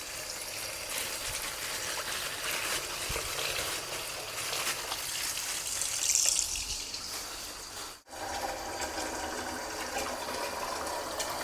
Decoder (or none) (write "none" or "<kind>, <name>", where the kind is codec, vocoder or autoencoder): none